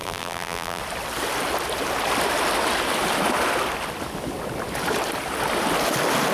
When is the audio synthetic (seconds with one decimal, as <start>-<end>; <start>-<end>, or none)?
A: 0.0-0.8